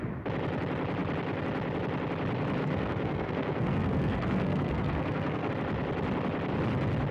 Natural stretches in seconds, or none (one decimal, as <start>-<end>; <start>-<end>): 0.0-2.6; 5.5-7.1